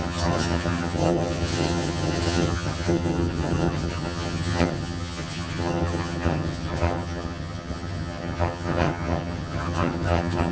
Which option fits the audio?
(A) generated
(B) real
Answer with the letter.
A